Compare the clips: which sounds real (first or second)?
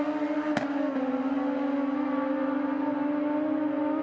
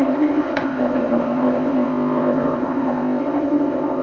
first